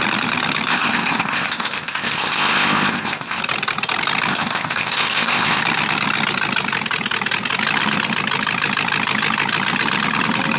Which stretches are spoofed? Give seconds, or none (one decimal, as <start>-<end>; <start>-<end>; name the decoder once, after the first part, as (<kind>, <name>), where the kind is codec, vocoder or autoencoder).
0.7-3.4 (codec, ZipCodec); 4.3-5.6